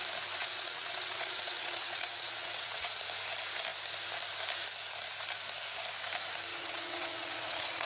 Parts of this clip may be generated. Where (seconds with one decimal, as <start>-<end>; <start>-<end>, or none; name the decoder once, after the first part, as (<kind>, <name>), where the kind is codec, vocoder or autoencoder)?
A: 0.4-3.0 (vocoder, WaveNeXt); 6.5-7.9